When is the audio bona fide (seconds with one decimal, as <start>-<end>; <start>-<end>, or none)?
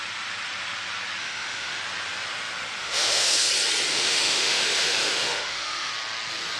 0.0-1.2; 1.8-2.8; 3.5-3.9; 5.9-6.6